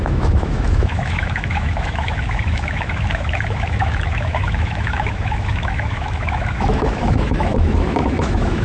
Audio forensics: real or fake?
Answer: fake